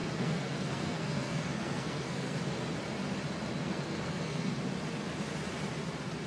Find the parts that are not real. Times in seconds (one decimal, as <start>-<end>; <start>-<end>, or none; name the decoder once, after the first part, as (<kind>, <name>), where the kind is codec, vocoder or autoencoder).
0.0-2.4 (codec, SNAC); 3.6-4.5